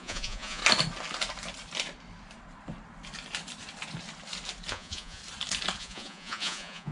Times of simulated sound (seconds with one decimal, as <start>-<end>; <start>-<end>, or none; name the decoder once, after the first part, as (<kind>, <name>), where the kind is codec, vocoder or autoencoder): 0.0-0.6 (vocoder, Vocos); 4.7-5.2; 5.8-6.9